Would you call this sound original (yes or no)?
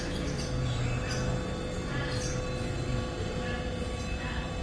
yes